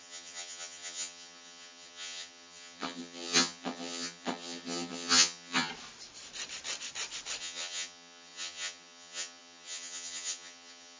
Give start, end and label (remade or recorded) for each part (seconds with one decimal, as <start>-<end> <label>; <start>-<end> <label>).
0.0-5.7 remade; 5.7-7.4 recorded; 7.4-11.0 remade